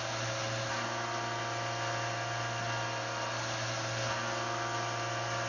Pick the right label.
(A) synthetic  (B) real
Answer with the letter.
B